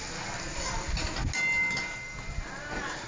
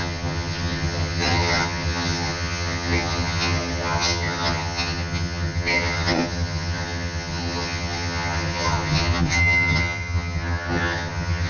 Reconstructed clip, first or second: second